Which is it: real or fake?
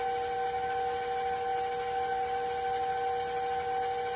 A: real